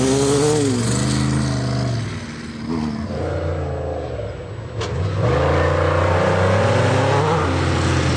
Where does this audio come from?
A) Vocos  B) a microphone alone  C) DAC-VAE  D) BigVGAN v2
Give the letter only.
B